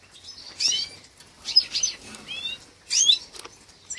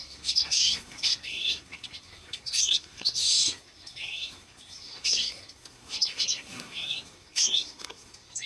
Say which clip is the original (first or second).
first